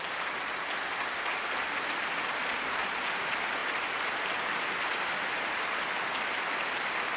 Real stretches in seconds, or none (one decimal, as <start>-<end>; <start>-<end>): 0.0-7.2